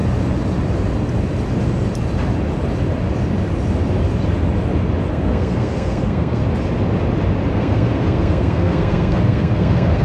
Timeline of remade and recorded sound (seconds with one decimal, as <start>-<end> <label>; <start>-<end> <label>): 0.0-5.1 recorded; 5.1-6.4 remade; 6.4-7.5 recorded; 7.5-10.0 remade